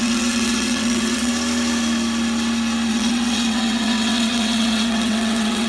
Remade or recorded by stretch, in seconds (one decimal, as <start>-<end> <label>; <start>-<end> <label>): 0.0-1.3 remade; 1.3-2.9 recorded; 2.9-5.7 remade